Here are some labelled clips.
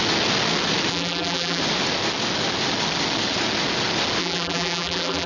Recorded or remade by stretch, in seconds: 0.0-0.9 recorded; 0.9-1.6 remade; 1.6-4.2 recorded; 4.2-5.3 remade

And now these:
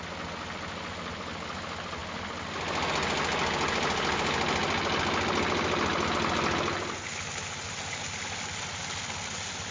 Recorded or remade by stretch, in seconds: 0.0-9.7 recorded

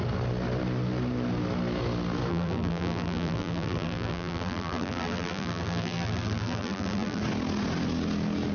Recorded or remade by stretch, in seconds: 0.0-2.3 recorded; 2.3-7.2 remade; 7.2-8.5 recorded

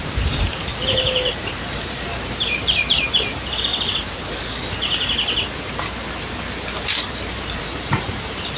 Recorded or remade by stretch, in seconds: 0.0-3.7 remade; 3.7-7.1 recorded; 7.1-8.6 remade

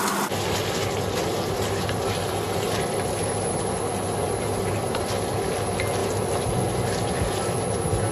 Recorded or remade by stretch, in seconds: 0.0-8.1 recorded